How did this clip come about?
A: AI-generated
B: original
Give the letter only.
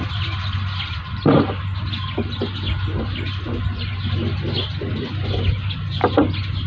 B